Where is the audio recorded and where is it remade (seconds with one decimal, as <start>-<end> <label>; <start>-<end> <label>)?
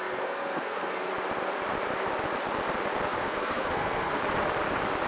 0.0-1.1 remade; 1.1-3.1 recorded; 3.1-4.2 remade; 4.2-5.1 recorded